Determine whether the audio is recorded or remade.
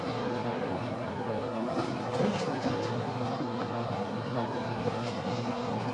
remade